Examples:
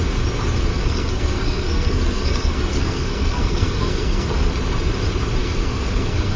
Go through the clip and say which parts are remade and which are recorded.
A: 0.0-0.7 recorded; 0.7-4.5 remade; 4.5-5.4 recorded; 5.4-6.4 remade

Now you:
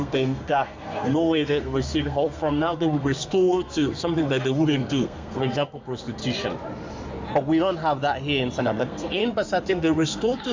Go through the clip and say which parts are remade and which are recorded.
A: 0.0-6.2 remade; 6.2-8.6 recorded; 8.6-9.2 remade; 9.2-9.7 recorded; 9.7-10.5 remade

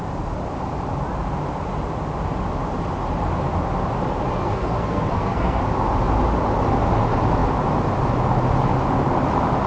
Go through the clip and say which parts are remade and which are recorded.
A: 0.0-4.4 recorded; 4.4-5.6 remade; 5.6-9.7 recorded